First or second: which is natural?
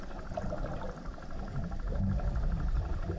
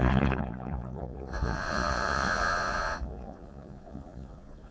first